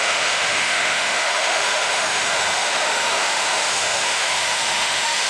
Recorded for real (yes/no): no